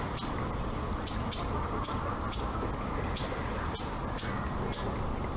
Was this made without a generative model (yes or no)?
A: yes